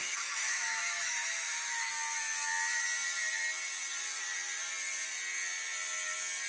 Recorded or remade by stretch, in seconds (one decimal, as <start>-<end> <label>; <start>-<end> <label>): 0.0-1.9 remade; 1.9-6.5 recorded